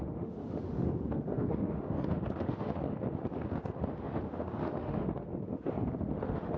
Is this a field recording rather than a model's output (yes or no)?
no